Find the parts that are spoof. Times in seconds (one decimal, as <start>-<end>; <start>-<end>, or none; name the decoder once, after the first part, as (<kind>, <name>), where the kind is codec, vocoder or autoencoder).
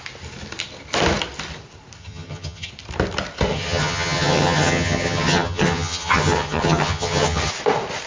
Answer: 2.0-2.7 (vocoder, HiFi-GAN); 3.5-7.5